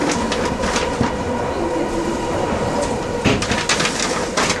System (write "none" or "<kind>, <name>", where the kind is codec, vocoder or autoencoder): none